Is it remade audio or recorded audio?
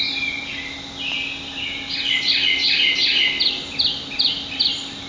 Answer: recorded